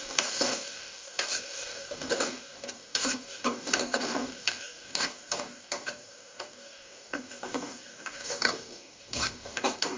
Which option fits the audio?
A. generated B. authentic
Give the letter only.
A